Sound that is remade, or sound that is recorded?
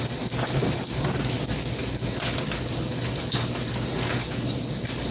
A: recorded